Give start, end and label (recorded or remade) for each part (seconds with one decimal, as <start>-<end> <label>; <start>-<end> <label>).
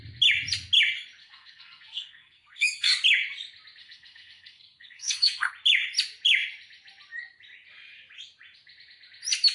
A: 0.0-1.2 recorded; 1.2-2.9 remade; 2.9-3.8 recorded; 3.8-5.5 remade; 5.5-9.5 recorded